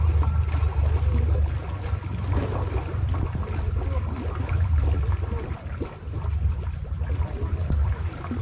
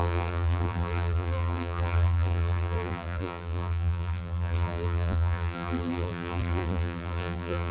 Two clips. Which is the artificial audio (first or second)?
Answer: second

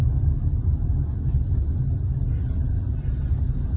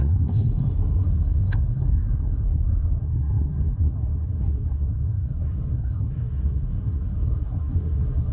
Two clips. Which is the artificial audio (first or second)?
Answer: second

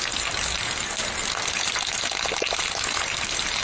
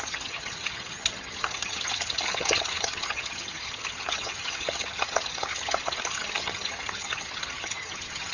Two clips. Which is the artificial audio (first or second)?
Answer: second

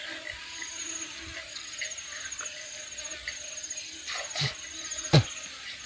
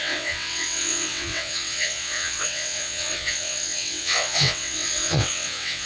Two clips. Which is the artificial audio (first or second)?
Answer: second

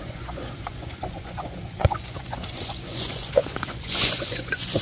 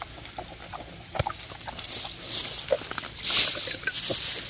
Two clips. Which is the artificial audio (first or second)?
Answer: first